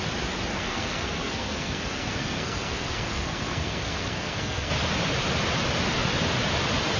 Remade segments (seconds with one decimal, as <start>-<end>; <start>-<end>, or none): 0.5-4.7